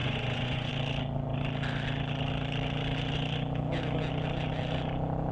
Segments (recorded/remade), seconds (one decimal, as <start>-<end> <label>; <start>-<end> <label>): 0.0-0.7 remade; 0.7-5.3 recorded